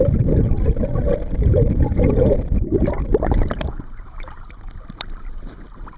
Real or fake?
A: real